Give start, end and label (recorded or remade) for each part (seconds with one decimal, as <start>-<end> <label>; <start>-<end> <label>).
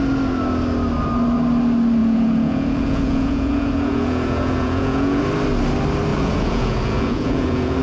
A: 0.0-2.0 recorded; 2.0-5.2 remade; 5.2-6.1 recorded; 6.1-7.8 remade